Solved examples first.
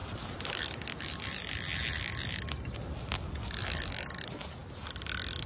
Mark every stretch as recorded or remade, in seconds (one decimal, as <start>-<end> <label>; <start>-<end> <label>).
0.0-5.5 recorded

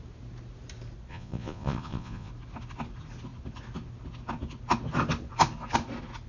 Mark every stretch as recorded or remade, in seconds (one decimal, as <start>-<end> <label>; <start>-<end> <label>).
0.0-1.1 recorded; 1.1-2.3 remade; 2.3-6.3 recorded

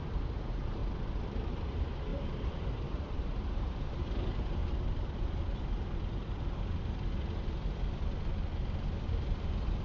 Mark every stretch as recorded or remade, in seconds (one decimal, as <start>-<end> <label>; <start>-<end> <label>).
0.0-0.8 remade; 0.8-1.5 recorded; 1.5-4.6 remade; 4.6-9.0 recorded; 9.0-9.8 remade

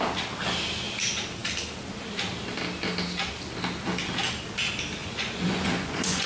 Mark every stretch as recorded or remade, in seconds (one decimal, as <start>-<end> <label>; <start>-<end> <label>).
0.0-5.0 recorded; 5.0-6.3 remade